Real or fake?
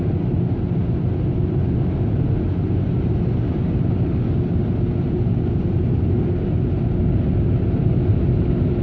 real